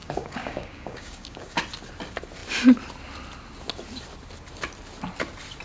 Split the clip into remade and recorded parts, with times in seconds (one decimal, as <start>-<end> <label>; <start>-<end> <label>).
0.0-1.6 remade; 1.6-5.6 recorded